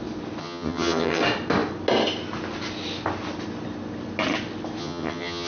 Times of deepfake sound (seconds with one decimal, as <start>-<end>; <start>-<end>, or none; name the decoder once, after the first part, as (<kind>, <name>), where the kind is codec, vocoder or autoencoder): 0.4-1.2 (vocoder, HiFi-GAN); 4.8-5.5